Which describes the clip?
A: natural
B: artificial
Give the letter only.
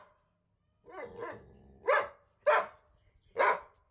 A